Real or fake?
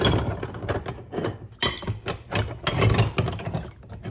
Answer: real